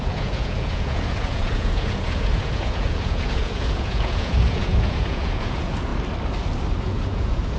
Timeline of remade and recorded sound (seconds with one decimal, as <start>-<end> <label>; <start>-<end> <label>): 0.0-5.9 remade; 5.9-6.8 recorded; 6.8-7.6 remade